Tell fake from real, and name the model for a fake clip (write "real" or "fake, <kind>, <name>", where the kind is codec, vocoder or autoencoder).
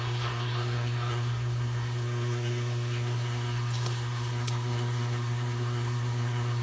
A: fake, codec, SNAC